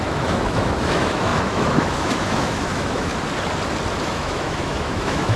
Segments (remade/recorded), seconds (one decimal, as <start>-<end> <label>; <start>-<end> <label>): 0.0-3.1 remade; 3.1-4.0 recorded; 4.0-5.4 remade